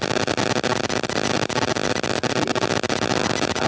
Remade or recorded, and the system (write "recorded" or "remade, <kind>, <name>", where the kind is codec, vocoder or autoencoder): recorded